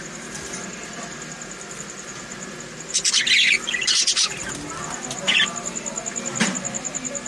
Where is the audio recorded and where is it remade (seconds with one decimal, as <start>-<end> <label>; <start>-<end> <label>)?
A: 0.0-7.3 recorded